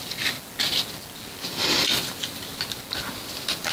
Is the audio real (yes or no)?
yes